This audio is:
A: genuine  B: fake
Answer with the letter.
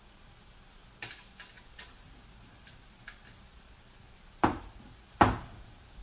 A